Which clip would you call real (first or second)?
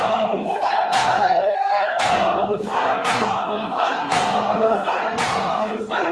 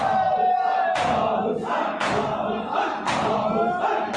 second